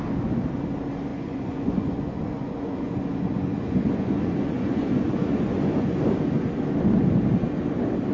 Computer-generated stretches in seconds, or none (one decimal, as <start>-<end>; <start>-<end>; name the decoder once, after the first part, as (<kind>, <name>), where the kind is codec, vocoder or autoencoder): 1.1-6.0 (vocoder, Vocos)